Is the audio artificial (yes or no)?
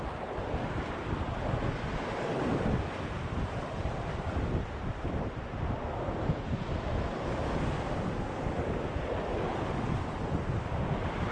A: no